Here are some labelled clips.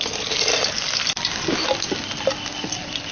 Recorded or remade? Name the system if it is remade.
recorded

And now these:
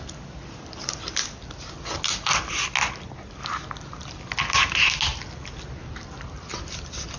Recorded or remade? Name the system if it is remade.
recorded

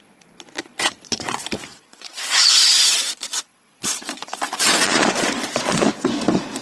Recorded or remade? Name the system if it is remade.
remade, vocoder, Vocos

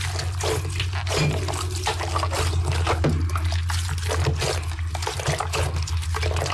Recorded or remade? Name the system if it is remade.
recorded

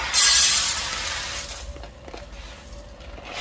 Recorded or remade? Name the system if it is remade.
recorded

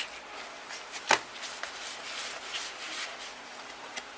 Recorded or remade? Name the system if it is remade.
recorded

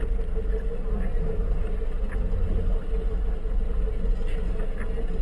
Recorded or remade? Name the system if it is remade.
recorded